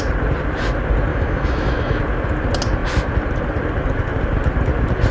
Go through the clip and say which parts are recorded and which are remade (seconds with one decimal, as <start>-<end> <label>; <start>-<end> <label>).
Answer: 0.0-1.1 recorded; 1.1-2.0 remade; 2.0-5.1 recorded